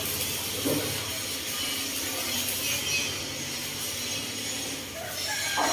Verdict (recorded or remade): recorded